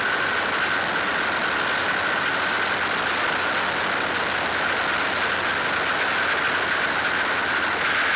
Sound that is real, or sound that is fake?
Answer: real